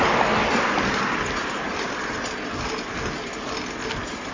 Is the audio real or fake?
real